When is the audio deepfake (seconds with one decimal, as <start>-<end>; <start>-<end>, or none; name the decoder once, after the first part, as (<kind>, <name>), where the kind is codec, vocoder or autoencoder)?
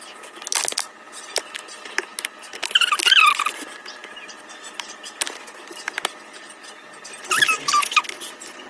none